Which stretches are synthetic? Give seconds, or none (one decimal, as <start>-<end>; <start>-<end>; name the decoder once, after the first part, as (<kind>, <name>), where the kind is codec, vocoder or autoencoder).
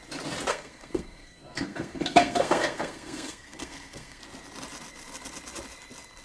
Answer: 0.5-4.2 (codec, SNAC)